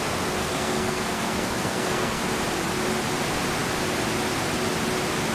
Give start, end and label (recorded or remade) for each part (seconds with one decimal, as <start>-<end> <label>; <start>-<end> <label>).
0.0-0.4 recorded; 0.4-2.2 remade; 2.2-5.3 recorded